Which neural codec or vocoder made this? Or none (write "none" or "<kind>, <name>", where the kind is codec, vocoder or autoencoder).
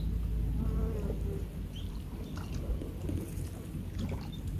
none